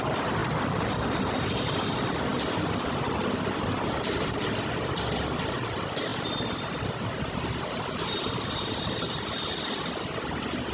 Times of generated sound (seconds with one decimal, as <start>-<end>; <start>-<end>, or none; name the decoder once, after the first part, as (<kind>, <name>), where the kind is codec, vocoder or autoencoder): 0.0-10.7 (vocoder, BigVGAN v2)